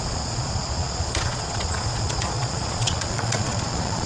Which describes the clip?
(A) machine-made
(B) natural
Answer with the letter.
A